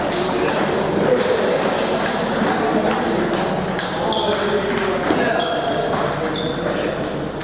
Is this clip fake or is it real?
real